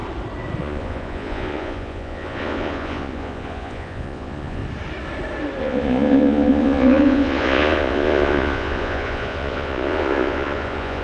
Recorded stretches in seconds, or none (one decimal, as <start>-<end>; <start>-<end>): 0.0-0.6; 4.6-5.6